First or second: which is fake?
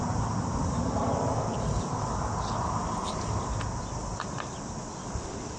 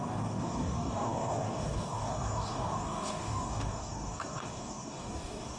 second